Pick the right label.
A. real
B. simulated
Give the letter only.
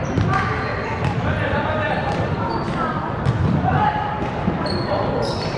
A